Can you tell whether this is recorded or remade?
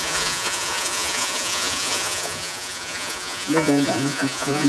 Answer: remade